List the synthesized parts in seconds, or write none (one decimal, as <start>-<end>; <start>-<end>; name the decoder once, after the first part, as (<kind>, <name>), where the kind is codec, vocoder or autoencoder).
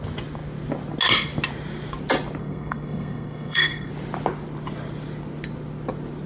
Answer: 2.4-3.9 (codec, SNAC)